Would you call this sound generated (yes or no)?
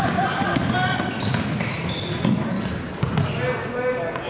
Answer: no